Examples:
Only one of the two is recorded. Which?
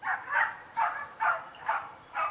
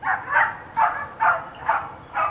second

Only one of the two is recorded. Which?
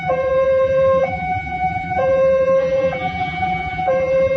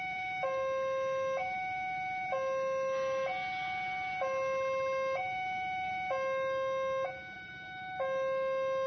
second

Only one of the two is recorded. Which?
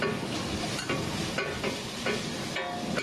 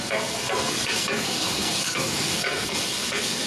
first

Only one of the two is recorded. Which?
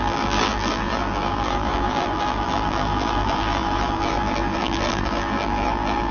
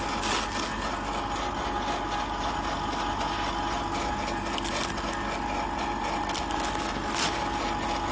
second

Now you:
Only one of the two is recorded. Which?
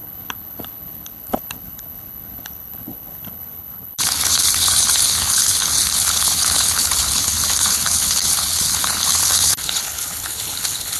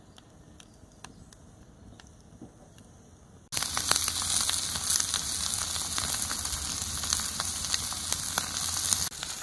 second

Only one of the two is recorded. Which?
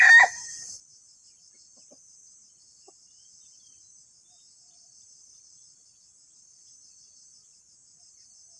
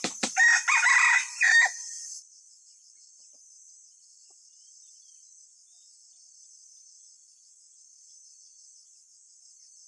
first